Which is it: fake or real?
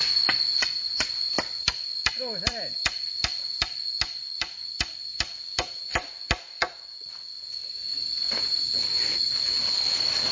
real